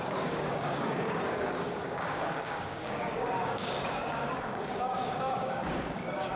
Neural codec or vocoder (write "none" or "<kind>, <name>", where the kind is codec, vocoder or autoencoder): codec, DAC